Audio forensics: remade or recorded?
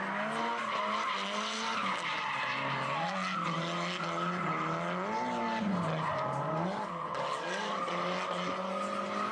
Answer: recorded